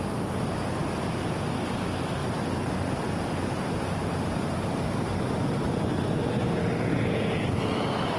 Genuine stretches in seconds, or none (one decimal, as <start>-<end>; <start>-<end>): 0.0-2.2; 7.1-8.2